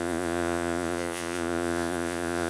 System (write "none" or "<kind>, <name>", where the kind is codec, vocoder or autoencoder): vocoder, Vocos